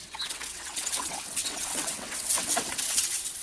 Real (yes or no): no